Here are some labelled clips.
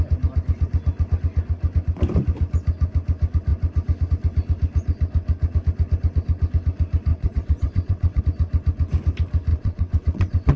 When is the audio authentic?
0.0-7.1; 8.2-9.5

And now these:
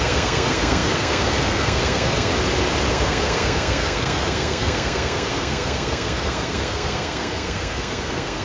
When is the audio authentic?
2.3-2.9

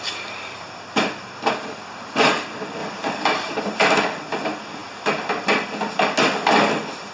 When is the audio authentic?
0.0-2.8; 3.8-7.1

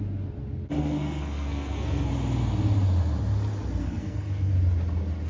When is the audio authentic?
0.0-0.8; 2.1-3.8; 4.5-5.3

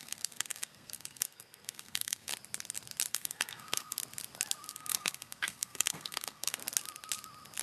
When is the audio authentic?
2.3-3.1; 4.0-4.7; 6.6-7.6

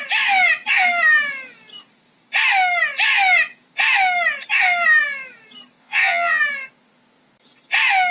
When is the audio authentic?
0.0-5.8; 6.4-8.1

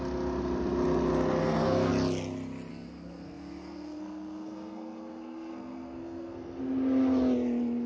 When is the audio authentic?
0.0-1.4; 1.9-2.7; 6.6-7.9